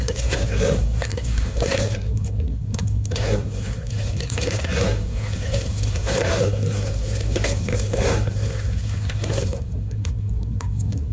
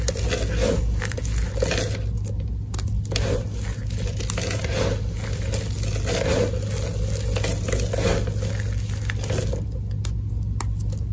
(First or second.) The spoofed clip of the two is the first